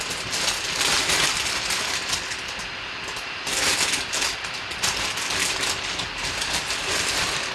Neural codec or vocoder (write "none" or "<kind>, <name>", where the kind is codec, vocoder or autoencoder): none